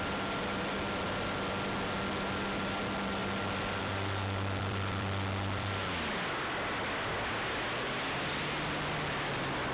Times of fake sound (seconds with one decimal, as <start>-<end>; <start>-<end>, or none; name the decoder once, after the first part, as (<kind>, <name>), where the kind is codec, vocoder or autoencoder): 0.0-9.7 (vocoder, BigVGAN v2)